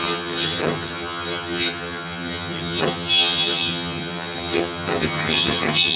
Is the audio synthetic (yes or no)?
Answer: yes